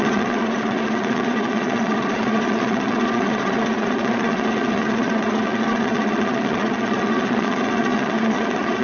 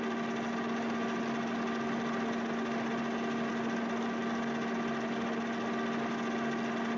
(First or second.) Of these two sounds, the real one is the second